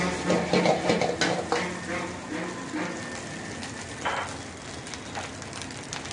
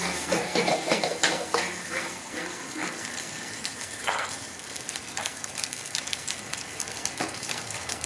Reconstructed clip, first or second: second